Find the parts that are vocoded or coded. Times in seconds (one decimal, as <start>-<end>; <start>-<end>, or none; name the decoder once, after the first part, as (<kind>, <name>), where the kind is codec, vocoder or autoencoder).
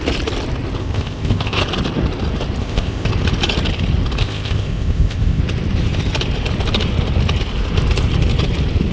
0.8-1.6 (codec, ZipCodec); 2.6-3.1; 4.2-5.4